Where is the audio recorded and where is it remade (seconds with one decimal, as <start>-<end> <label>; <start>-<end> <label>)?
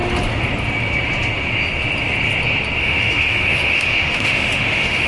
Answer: 0.0-2.8 recorded; 2.8-5.1 remade